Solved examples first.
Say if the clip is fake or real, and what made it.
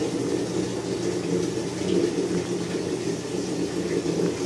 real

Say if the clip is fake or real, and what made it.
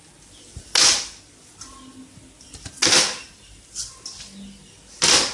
real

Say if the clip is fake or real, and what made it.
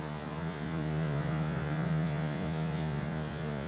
fake, vocoder, Vocos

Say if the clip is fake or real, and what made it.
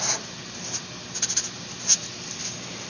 real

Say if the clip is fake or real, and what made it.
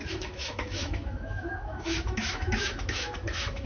fake, autoencoder, DAC-VAE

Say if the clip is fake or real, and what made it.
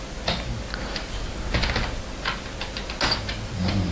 real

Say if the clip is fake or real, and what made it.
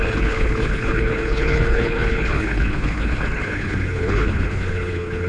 fake, codec, HILCodec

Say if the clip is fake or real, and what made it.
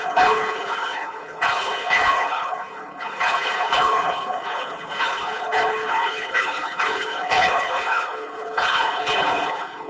fake, codec, HILCodec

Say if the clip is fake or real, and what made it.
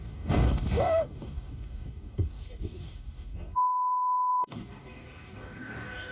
fake, codec, DAC